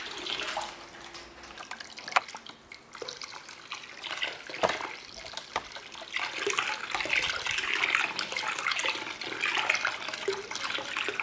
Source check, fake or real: real